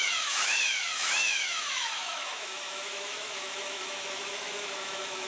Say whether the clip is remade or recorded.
remade